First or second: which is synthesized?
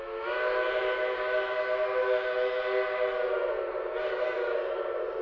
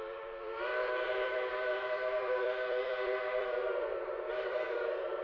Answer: second